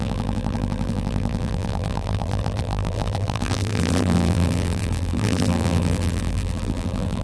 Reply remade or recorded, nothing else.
remade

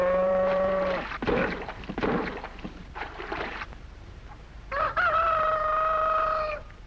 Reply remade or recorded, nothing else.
remade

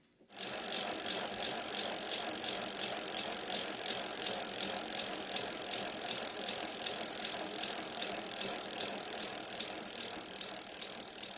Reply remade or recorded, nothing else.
recorded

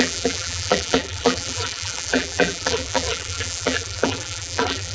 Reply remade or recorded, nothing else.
remade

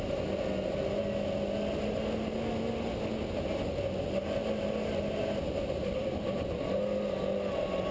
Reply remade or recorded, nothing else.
recorded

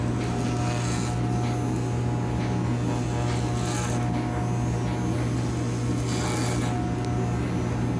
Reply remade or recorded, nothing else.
recorded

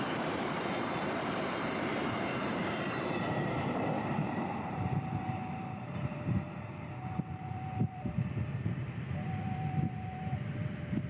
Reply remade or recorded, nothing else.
remade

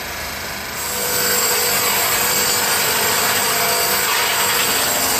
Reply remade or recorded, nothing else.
recorded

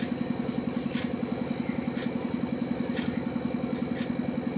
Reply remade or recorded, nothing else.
recorded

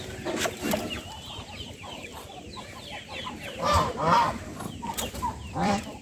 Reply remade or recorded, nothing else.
remade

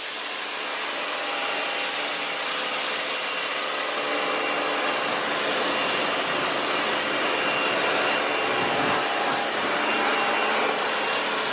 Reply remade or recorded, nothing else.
recorded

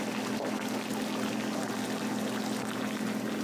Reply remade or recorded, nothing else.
recorded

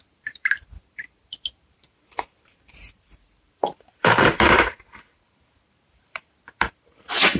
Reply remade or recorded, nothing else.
remade